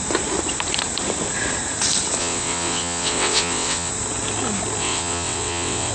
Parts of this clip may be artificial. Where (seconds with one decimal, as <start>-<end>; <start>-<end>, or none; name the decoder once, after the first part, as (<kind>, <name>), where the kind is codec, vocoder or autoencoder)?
2.2-3.9 (vocoder, WaveNeXt); 4.8-5.9